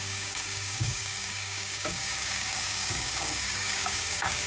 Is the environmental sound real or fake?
fake